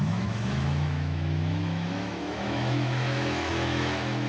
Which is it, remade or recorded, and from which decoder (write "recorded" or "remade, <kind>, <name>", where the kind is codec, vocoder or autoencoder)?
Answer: remade, autoencoder, DAC-VAE